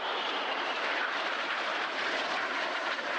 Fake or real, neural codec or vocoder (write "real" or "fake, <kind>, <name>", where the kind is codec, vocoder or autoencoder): fake, vocoder, BigVGAN v2